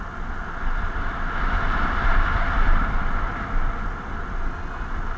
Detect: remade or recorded recorded